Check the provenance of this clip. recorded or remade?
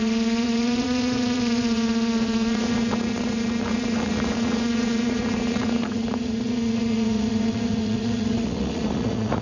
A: remade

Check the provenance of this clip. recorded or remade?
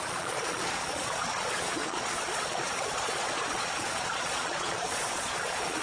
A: remade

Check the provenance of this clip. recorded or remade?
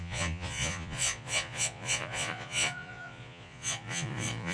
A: remade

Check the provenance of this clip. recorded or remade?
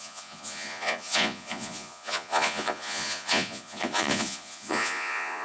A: remade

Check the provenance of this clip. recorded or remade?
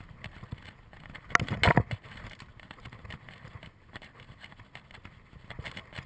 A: recorded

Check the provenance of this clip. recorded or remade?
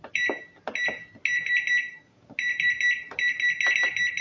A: recorded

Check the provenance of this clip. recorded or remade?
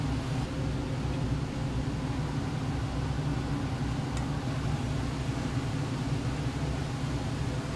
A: recorded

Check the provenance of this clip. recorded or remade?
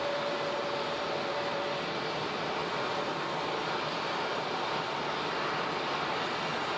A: recorded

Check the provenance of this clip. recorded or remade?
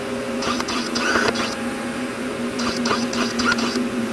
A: remade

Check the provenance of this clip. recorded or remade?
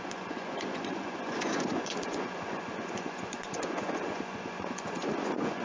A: remade